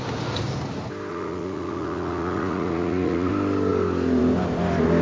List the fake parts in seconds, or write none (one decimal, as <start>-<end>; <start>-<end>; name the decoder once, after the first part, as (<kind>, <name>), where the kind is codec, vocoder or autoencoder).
1.1-3.3 (vocoder, Vocos)